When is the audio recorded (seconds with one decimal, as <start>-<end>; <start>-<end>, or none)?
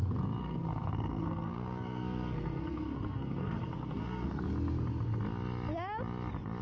0.0-0.4; 4.4-6.6